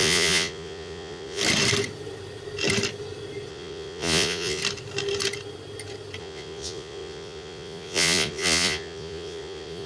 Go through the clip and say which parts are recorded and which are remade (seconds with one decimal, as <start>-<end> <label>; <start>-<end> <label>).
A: 0.0-1.4 remade; 1.4-3.5 recorded; 3.5-4.6 remade; 4.6-6.2 recorded; 6.2-9.9 remade